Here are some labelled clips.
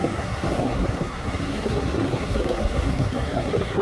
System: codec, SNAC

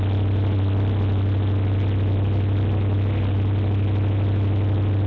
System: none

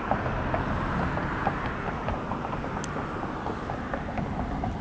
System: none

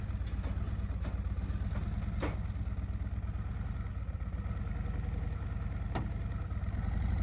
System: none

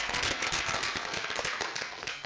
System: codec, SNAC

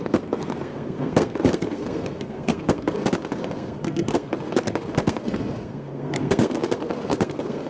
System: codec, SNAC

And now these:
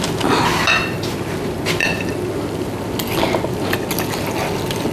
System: none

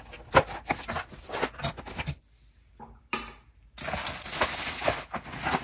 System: none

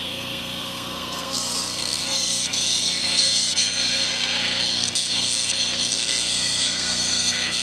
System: codec, SNAC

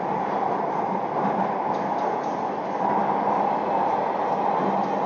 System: none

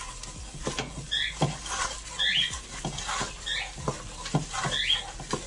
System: none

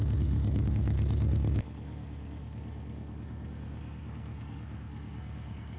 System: codec, SNAC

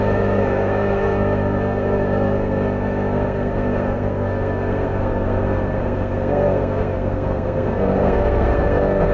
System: codec, SNAC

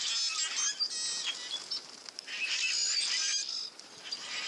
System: none